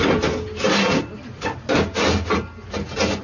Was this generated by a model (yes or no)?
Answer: no